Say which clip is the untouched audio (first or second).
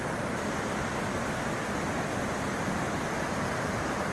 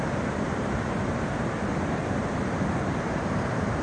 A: first